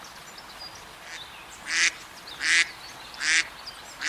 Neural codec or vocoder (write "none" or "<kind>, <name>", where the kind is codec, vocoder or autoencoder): none